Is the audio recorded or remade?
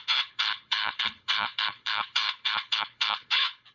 remade